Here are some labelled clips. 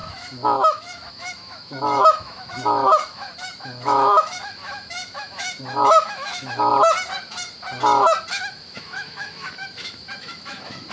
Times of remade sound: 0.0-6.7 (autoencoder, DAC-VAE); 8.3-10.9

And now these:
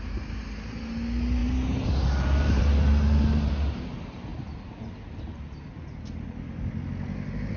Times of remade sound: 1.4-2.6 (vocoder, BigVGAN v2); 4.3-4.9

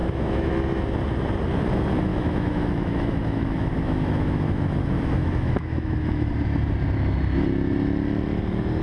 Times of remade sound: 0.0-0.5 (autoencoder, DAC-VAE); 2.1-6.3

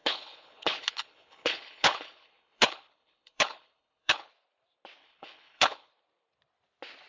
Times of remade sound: 0.0-4.3 (codec, HILCodec); 5.0-5.9

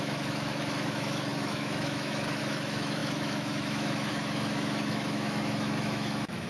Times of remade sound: 0.0-6.5 (autoencoder, DAC-VAE)

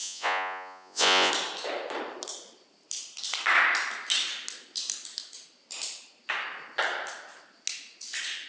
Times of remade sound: 0.0-1.3 (vocoder, Vocos)

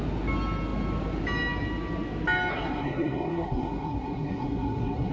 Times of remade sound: 2.5-5.1 (codec, SNAC)